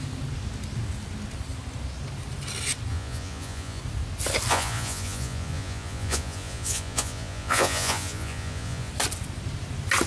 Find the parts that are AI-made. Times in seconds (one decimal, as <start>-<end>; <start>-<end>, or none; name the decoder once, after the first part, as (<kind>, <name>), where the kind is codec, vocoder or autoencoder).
2.9-3.8 (vocoder, Vocos); 4.5-8.9